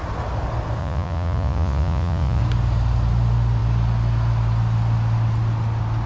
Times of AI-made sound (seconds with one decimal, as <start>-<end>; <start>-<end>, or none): 0.8-2.4